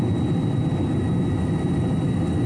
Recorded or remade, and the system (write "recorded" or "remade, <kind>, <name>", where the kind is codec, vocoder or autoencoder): recorded